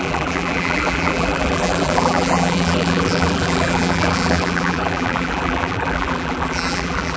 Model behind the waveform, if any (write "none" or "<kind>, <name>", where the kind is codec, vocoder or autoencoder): vocoder, BigVGAN v2